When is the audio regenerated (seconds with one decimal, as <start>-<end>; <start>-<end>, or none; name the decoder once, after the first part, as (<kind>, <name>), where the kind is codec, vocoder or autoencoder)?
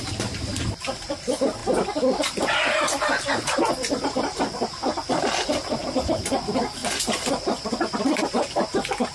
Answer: 0.0-6.8 (vocoder, BigVGAN v2); 7.3-9.1